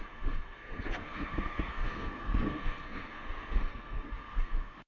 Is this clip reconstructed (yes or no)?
yes